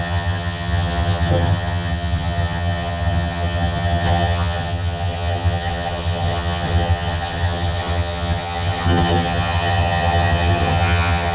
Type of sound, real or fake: fake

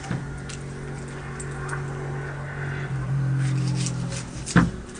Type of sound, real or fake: real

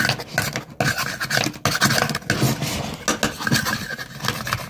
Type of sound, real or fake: real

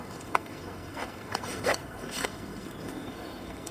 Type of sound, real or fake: fake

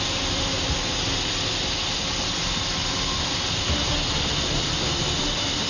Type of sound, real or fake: real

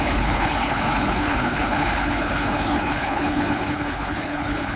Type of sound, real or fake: fake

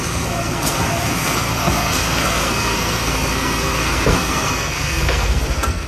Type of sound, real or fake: fake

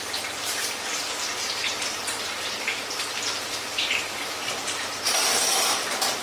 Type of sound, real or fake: fake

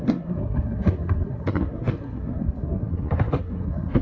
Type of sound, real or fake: fake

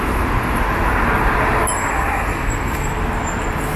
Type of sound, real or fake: real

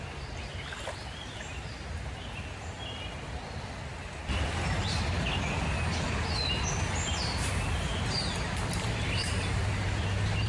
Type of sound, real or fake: real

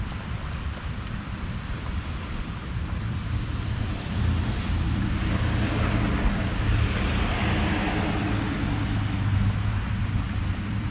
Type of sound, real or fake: real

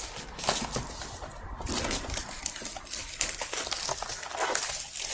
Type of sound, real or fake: real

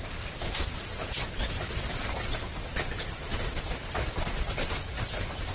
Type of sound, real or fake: real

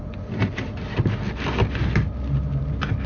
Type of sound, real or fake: real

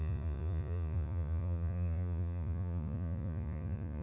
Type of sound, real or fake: fake